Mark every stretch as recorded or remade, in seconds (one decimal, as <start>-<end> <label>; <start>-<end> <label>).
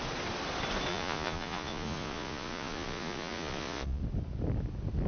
0.0-0.9 recorded; 0.9-4.0 remade; 4.0-5.1 recorded